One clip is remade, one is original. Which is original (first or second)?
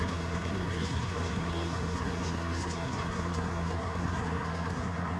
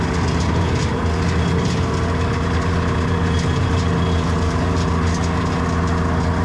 second